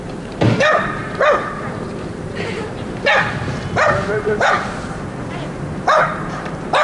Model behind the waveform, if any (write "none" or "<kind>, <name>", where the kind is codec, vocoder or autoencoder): vocoder, BigVGAN v2